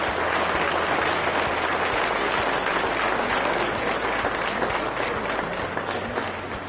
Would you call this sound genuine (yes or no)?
yes